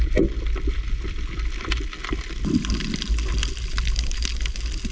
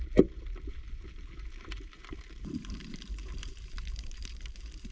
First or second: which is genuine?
first